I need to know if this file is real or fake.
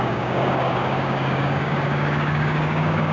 fake